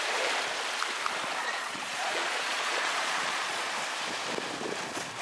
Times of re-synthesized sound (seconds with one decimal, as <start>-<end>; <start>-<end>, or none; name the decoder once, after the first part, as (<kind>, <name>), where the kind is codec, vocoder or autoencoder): 1.4-3.7 (vocoder, Vocos)

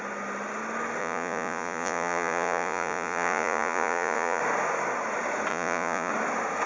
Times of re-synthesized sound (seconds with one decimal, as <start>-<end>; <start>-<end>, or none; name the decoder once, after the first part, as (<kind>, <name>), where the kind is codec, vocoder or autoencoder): 1.0-4.4 (vocoder, Vocos); 5.5-6.1

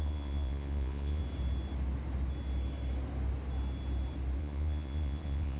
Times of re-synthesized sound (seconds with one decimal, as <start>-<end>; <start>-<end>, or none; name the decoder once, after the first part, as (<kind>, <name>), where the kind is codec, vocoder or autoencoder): 0.0-1.2 (vocoder, Vocos); 4.4-5.6

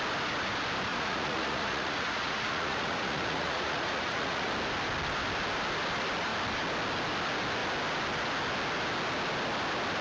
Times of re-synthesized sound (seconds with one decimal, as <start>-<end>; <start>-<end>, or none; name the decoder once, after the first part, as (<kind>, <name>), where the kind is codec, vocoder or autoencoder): 0.9-4.5 (vocoder, Vocos)